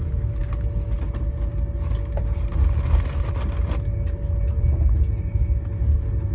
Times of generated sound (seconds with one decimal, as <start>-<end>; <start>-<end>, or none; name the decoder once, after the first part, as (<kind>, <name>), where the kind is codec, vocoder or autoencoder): none